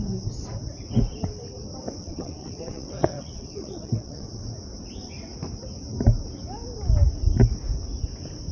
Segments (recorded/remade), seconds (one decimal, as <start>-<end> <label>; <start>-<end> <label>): 0.0-2.0 recorded; 2.0-4.3 remade; 4.3-8.5 recorded